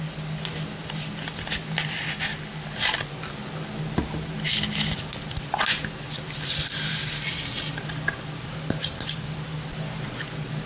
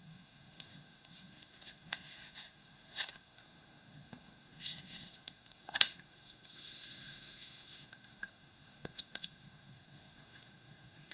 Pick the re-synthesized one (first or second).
second